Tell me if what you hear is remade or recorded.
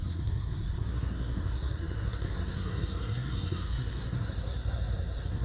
remade